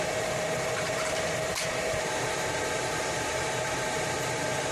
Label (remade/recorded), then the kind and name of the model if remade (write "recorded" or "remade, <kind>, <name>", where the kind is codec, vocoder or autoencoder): remade, vocoder, BigVGAN v2